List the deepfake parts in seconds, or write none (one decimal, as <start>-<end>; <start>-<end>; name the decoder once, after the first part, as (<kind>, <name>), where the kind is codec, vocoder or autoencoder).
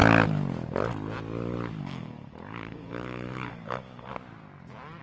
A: 1.8-4.1 (codec, DAC)